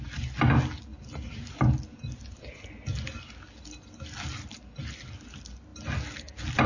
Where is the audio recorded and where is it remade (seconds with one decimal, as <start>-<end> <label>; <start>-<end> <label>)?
0.0-6.7 recorded